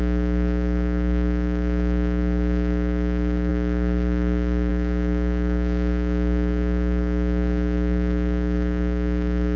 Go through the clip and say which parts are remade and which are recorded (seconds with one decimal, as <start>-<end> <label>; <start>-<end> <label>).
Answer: 0.0-9.6 remade